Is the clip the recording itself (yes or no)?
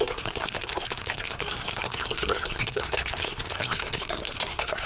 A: no